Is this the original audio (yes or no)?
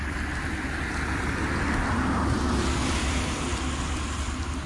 yes